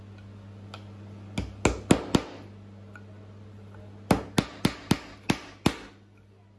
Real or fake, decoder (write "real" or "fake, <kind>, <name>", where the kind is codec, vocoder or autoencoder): real